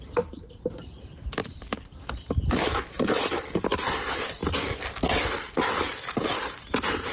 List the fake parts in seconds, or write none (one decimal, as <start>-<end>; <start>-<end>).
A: 0.0-4.4; 6.1-7.1

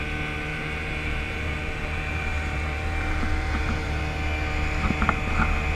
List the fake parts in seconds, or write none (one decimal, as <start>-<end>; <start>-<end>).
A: 0.5-4.0

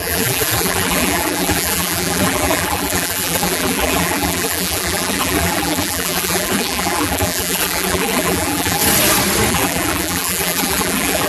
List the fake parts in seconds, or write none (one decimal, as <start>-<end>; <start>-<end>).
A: 0.0-8.8; 9.5-11.3

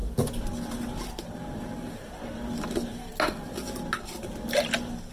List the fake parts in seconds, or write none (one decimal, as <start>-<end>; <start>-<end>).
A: none

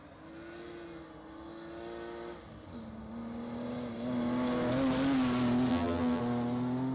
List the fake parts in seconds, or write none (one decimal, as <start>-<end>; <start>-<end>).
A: 5.7-6.2

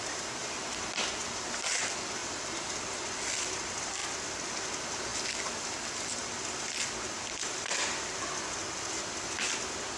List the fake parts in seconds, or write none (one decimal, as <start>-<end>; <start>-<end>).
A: 2.2-3.0; 5.1-8.2

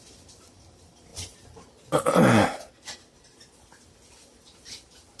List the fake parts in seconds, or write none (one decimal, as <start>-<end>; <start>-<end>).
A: 1.1-2.7

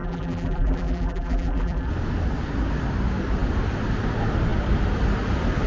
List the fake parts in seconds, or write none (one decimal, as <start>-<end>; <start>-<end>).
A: 0.0-1.9